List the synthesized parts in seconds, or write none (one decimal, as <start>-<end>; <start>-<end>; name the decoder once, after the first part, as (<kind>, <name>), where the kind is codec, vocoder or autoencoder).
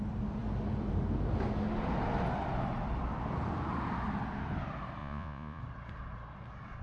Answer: 5.0-5.6 (vocoder, Vocos)